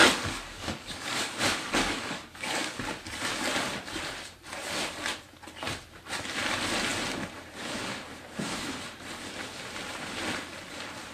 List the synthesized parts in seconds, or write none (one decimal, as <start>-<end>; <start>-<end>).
0.0-2.9